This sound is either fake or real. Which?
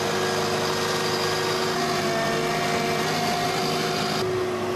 real